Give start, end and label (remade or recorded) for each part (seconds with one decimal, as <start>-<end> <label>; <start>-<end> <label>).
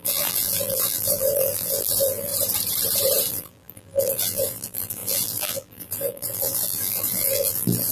0.0-2.3 remade; 2.3-3.3 recorded; 3.3-7.9 remade